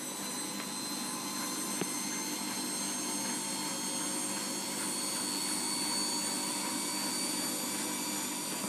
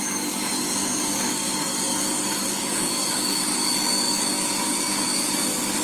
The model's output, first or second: second